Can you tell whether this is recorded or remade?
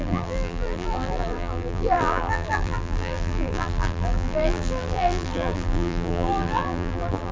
remade